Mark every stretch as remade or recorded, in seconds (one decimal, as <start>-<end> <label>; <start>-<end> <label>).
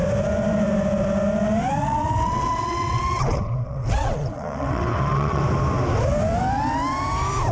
0.0-1.8 recorded; 1.8-5.4 remade; 5.4-7.5 recorded